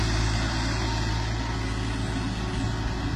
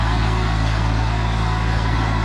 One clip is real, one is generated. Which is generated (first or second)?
second